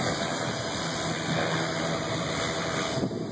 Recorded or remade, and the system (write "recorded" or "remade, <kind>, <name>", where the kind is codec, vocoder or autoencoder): recorded